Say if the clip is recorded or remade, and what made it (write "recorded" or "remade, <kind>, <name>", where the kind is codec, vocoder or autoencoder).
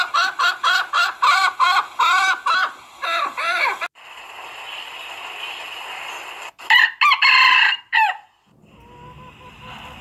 recorded